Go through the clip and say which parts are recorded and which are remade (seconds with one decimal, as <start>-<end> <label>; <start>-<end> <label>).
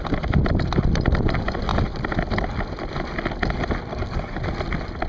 0.0-3.9 recorded; 3.9-4.4 remade; 4.4-5.1 recorded